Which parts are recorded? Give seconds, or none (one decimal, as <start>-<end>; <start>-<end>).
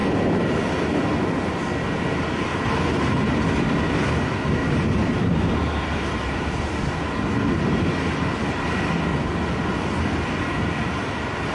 0.0-4.6; 6.9-9.1; 10.4-11.5